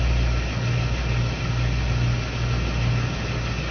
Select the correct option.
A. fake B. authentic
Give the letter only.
B